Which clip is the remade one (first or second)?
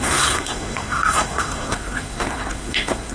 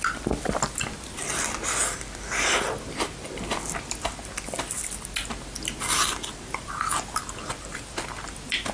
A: first